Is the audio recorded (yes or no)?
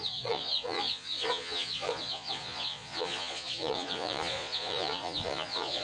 no